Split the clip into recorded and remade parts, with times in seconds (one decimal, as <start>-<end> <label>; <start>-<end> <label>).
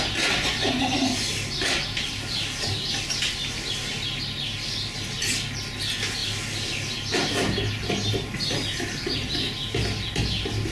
0.0-10.7 recorded